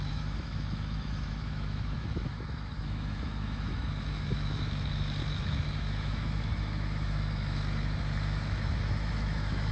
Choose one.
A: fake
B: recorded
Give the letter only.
A